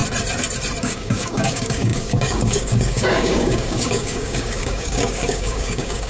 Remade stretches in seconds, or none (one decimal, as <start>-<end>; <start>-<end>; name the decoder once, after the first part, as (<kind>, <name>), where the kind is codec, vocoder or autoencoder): 0.8-6.1 (codec, DAC)